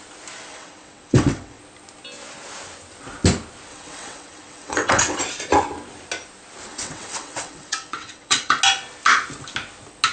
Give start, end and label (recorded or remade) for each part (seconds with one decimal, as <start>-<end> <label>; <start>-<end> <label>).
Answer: 0.0-0.5 recorded; 0.5-1.6 remade; 1.6-3.7 recorded; 3.7-5.2 remade; 5.2-6.7 recorded; 6.7-8.6 remade; 8.6-10.1 recorded